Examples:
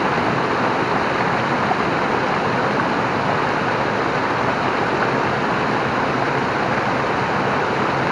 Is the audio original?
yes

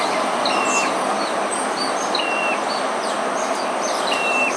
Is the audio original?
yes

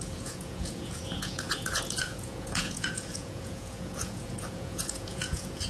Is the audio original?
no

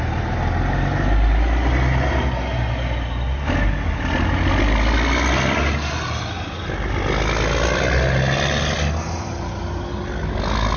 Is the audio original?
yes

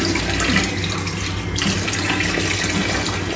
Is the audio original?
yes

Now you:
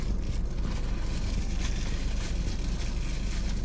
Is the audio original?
yes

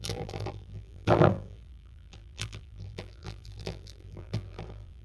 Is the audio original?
no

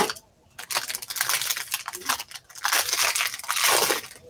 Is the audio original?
yes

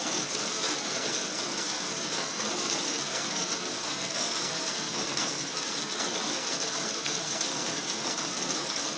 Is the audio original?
no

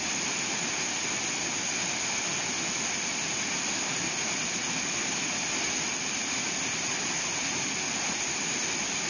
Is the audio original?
yes